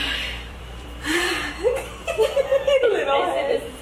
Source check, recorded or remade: remade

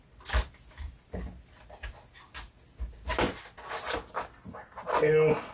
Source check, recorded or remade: recorded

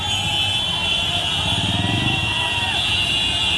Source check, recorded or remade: recorded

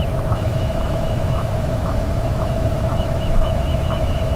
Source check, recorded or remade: remade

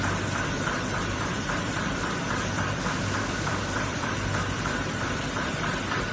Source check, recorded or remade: remade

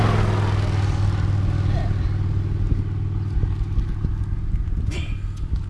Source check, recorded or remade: recorded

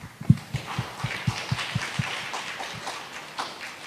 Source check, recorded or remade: recorded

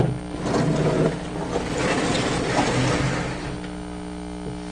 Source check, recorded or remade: recorded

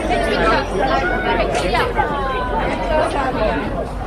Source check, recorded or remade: remade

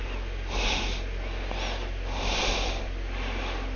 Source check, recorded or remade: recorded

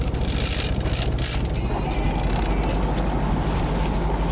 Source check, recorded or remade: recorded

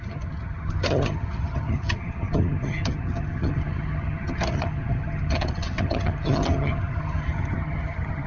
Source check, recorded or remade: remade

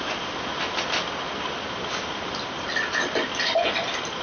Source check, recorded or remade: recorded